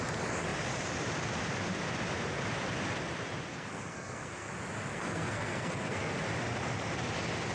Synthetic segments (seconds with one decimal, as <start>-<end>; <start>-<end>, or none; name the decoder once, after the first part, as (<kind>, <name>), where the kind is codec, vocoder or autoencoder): 3.5-4.5 (codec, SNAC); 4.9-6.1